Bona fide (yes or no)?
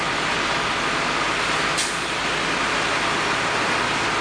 yes